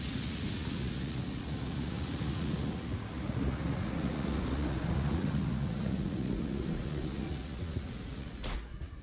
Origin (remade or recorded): remade